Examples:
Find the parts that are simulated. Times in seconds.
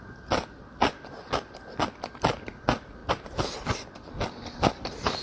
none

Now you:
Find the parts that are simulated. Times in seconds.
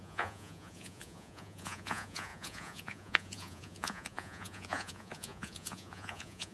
0.0-6.5 (vocoder, Vocos)